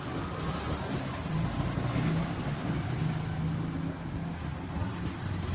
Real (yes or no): yes